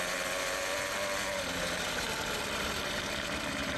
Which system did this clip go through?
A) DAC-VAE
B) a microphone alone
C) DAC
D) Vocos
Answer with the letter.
B